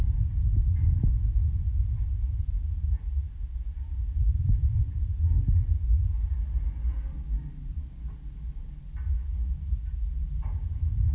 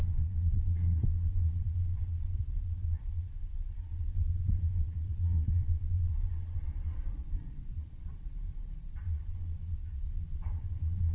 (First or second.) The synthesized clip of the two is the second